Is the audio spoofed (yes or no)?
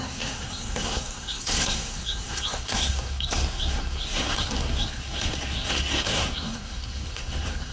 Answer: yes